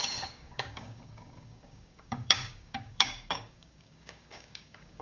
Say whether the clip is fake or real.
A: fake